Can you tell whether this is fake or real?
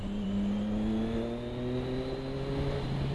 real